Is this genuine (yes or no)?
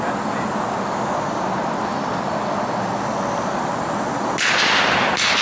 yes